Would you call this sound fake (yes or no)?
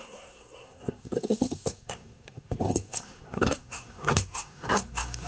yes